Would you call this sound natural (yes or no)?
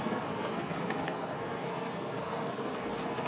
no